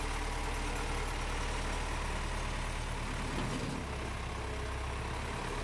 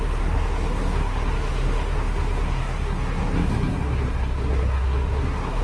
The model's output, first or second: second